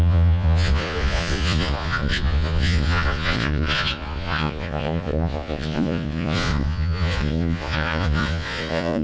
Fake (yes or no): yes